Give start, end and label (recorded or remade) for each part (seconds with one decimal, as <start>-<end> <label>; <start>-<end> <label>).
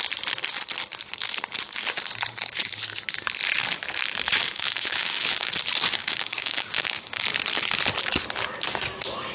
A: 0.0-4.4 recorded; 4.4-5.5 remade; 5.5-6.0 recorded; 6.0-7.2 remade; 7.2-9.3 recorded